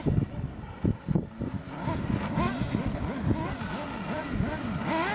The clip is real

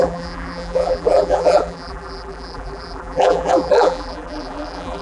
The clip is fake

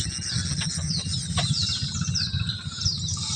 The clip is real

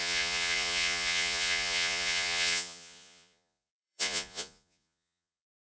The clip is fake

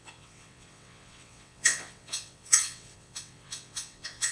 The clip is fake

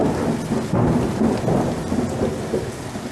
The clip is real